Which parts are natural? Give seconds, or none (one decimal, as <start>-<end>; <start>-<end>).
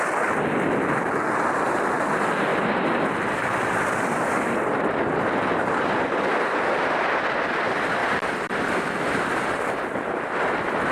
0.0-2.5; 6.7-8.0; 9.1-10.9